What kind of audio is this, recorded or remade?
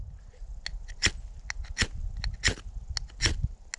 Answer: recorded